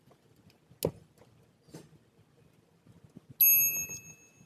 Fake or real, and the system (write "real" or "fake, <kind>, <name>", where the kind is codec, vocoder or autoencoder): real